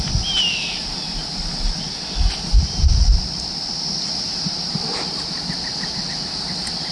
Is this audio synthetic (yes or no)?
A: no